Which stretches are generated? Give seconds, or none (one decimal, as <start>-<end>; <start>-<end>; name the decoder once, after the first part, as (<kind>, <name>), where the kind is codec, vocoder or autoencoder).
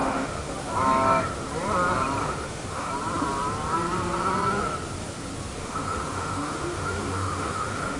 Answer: 0.0-0.5 (autoencoder, DAC-VAE); 2.2-2.9; 5.6-8.0